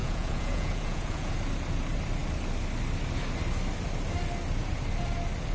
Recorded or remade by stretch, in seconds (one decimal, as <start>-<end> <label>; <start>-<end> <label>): 0.0-1.3 remade; 1.3-5.5 recorded